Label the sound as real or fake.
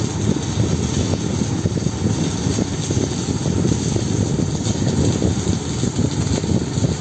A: real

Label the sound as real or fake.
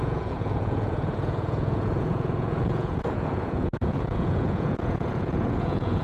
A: fake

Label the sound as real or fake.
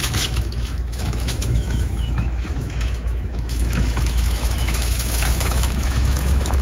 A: fake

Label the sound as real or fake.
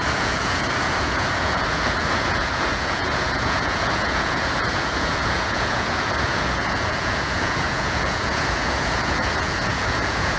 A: fake